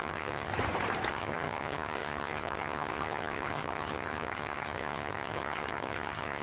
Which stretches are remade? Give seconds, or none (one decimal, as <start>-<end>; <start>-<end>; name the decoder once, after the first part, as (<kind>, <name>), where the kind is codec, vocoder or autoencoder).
0.0-0.5 (vocoder, HiFi-GAN); 1.1-6.4